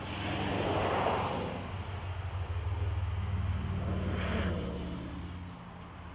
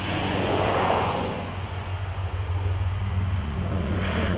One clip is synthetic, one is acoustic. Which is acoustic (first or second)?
first